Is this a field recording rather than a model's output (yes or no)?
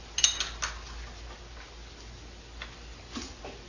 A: yes